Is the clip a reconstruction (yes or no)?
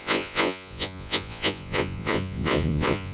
yes